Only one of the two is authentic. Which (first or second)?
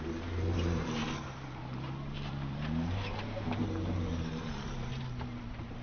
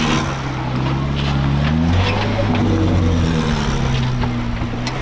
second